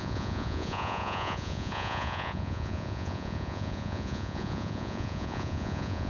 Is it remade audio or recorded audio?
remade